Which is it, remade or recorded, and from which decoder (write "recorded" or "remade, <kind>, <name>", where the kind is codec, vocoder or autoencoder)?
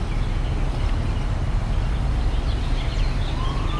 recorded